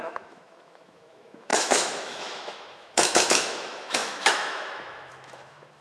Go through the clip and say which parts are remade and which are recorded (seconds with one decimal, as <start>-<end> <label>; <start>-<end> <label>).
0.0-5.8 remade